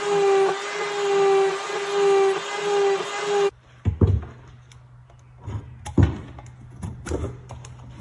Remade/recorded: recorded